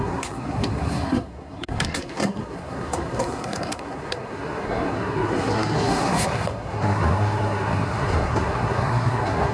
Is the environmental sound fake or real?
fake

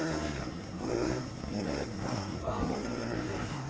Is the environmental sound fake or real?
fake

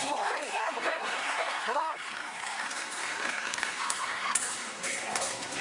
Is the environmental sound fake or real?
fake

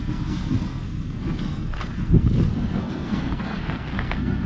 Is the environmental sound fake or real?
fake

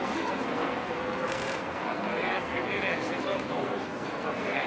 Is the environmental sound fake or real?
fake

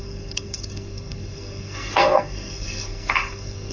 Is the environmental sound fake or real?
fake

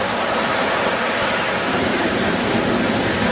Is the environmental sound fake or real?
real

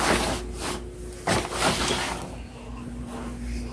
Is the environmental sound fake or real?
real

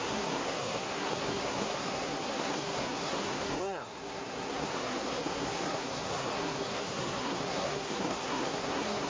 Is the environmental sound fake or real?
fake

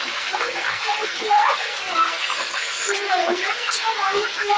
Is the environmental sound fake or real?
fake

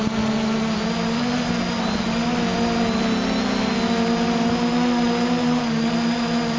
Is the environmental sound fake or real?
real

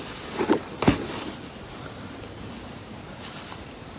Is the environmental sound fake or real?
real